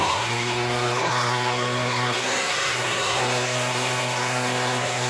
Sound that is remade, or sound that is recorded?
remade